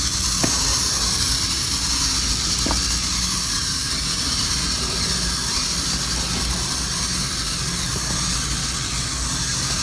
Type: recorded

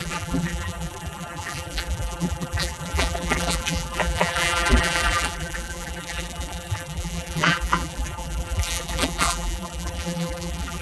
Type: remade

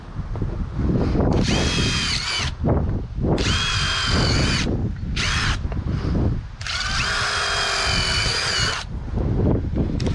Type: recorded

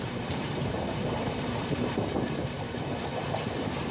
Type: remade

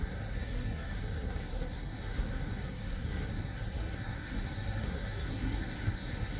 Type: remade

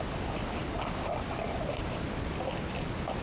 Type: recorded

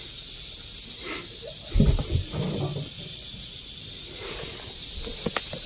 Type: recorded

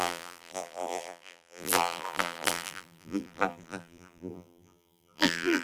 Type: remade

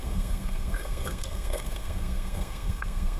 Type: remade